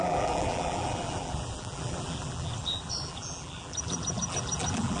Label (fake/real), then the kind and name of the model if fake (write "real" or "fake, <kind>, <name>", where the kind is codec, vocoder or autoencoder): fake, vocoder, BigVGAN v2